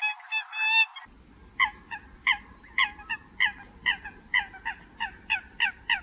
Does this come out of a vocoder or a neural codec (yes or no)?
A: no